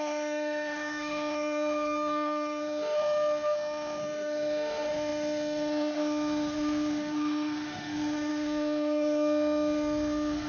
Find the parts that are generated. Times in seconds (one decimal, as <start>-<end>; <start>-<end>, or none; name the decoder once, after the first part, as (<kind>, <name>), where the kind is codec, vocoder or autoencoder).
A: 0.0-10.5 (autoencoder, DAC-VAE)